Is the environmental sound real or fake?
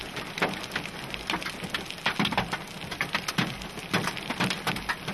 real